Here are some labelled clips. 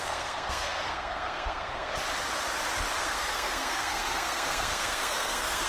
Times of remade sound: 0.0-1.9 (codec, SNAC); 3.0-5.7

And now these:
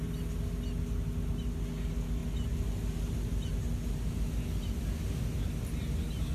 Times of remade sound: none

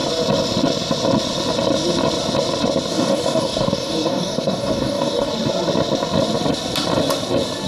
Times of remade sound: 2.9-5.3 (codec, DAC)